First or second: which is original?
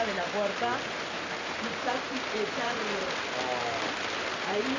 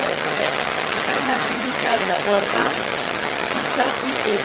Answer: first